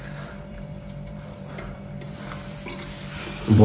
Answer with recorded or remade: remade